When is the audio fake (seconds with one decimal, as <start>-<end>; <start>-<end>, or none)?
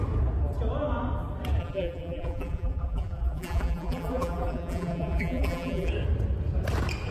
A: 1.6-5.9